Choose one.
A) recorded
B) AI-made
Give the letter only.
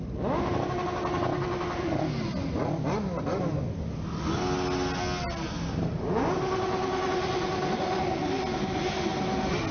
A